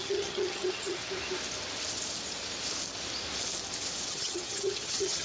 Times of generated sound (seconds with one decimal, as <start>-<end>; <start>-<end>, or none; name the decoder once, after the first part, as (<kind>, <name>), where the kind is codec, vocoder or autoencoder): 0.0-1.0 (vocoder, HiFi-GAN); 4.1-5.2